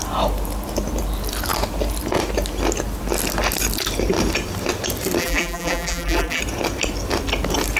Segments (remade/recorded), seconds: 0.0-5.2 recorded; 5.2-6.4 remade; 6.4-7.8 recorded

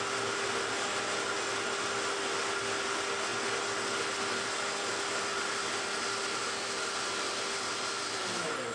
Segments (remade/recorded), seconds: 0.0-8.7 recorded

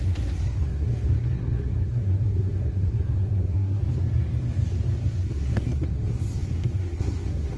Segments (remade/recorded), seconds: 0.0-3.8 remade; 3.8-5.0 recorded; 5.0-7.6 remade